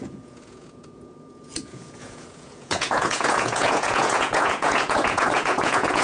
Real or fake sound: fake